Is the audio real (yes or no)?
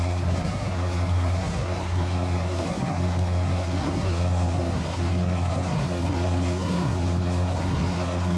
no